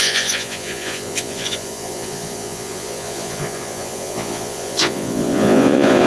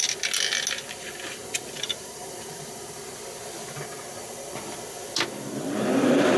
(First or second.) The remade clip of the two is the first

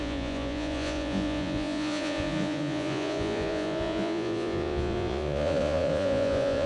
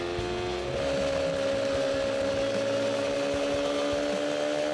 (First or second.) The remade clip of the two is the first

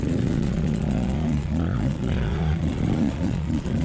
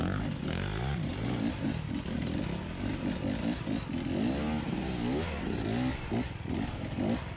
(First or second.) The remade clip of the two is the first